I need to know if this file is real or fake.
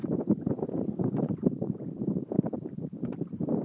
fake